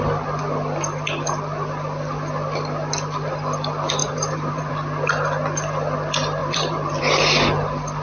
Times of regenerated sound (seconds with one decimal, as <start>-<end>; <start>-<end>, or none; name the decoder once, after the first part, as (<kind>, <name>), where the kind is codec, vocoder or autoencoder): 4.0-4.7 (vocoder, BigVGAN v2); 6.4-7.0